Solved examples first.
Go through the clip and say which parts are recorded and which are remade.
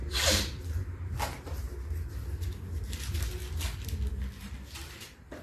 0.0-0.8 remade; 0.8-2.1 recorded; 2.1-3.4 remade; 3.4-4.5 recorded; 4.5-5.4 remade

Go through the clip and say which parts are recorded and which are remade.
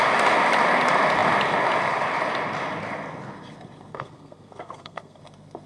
0.0-3.9 recorded; 3.9-5.2 remade; 5.2-5.7 recorded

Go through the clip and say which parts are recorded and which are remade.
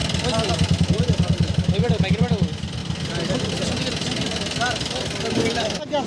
0.0-6.1 recorded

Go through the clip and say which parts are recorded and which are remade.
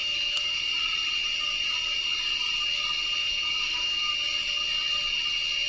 0.0-0.6 remade; 0.6-3.2 recorded; 3.2-4.1 remade; 4.1-5.7 recorded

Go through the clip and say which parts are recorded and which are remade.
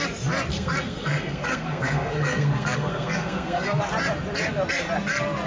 0.0-0.5 recorded; 0.5-3.8 remade; 3.8-5.5 recorded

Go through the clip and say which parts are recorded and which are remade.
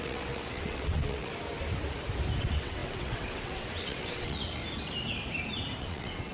0.0-1.3 remade; 1.3-2.4 recorded; 2.4-4.6 remade; 4.6-5.8 recorded; 5.8-6.3 remade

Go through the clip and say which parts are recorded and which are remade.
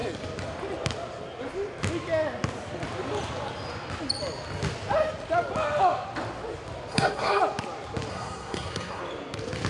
0.0-6.9 recorded; 6.9-7.4 remade; 7.4-8.1 recorded; 8.1-9.0 remade; 9.0-9.7 recorded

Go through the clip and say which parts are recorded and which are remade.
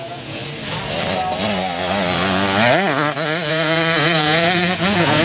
0.0-0.4 remade; 0.4-3.5 recorded; 3.5-5.2 remade